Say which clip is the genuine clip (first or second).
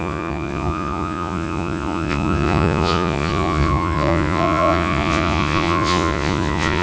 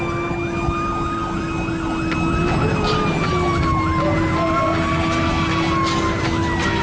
second